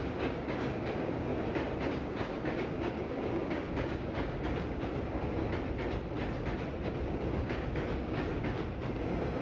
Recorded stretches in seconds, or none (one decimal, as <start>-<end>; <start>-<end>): 1.3-1.9; 5.4-6.9